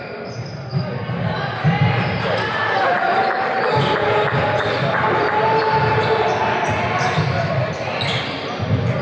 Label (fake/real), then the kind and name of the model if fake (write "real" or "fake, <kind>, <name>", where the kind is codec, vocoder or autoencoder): real